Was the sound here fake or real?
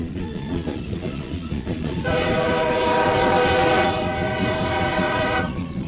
fake